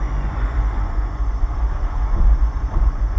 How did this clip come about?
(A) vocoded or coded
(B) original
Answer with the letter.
A